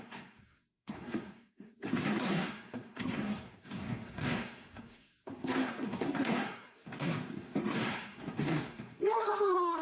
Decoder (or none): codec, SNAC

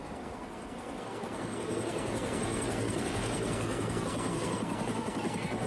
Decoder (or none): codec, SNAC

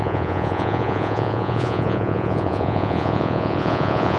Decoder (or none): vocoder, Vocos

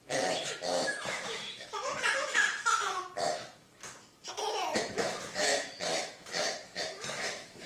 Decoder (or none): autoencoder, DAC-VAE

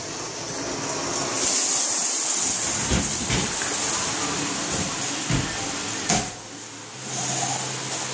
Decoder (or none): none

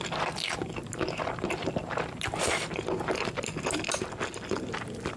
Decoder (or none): none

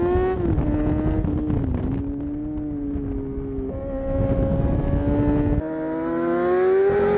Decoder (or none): none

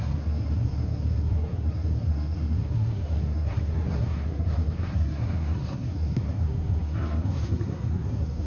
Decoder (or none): codec, SNAC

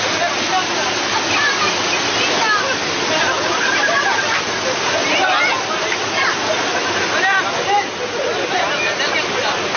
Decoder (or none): none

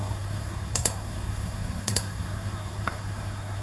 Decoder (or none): codec, SNAC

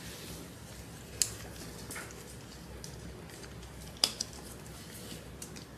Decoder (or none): none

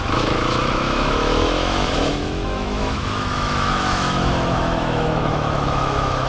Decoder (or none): autoencoder, DAC-VAE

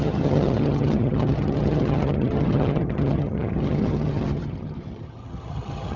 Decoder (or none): vocoder, HiFi-GAN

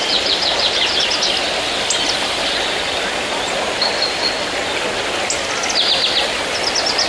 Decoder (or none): none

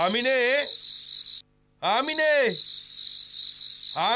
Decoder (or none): none